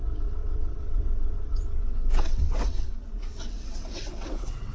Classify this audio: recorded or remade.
remade